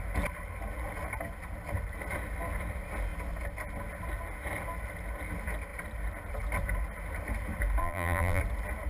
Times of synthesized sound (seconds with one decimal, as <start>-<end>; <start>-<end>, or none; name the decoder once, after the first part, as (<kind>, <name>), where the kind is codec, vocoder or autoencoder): 7.8-8.4 (vocoder, BigVGAN v2)

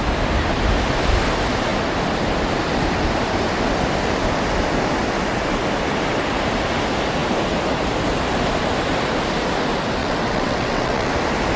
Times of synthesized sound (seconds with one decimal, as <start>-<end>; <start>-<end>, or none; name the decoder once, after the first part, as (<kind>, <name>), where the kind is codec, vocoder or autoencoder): 10.0-11.1 (vocoder, WaveNeXt)

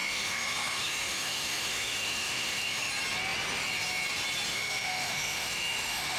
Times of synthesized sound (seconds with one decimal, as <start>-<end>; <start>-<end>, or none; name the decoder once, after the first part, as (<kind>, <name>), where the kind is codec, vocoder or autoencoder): 0.0-2.9 (autoencoder, DAC-VAE); 4.5-6.2

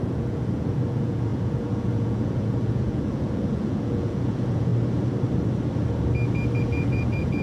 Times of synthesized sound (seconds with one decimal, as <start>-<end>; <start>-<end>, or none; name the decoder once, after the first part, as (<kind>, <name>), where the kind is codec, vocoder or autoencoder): 0.0-4.7 (vocoder, Vocos); 6.6-7.4

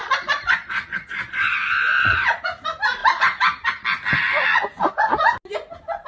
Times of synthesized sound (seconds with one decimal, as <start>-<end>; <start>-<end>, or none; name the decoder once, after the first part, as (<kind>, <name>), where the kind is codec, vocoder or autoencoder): 0.0-2.4 (vocoder, Vocos)

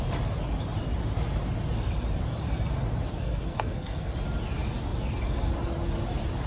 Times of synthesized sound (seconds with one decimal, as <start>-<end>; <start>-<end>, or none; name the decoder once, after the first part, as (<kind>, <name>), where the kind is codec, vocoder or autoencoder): 3.1-4.1 (codec, SNAC)